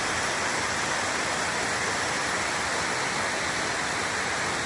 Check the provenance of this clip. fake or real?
real